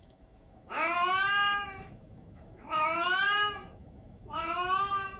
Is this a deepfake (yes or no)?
yes